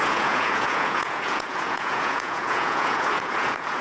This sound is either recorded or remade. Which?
remade